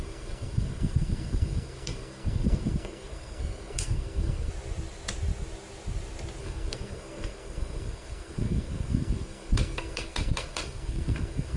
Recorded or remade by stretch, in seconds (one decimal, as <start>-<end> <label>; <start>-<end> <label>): 0.0-4.5 remade; 4.5-6.4 recorded; 6.4-11.6 remade